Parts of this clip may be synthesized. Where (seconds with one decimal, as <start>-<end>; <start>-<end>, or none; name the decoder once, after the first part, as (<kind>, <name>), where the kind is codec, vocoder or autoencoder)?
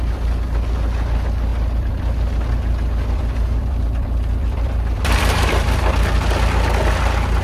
1.5-5.9 (vocoder, BigVGAN v2)